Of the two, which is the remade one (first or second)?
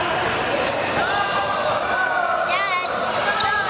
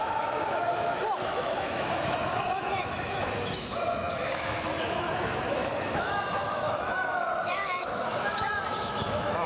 second